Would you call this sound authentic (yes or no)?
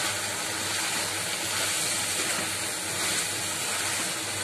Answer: yes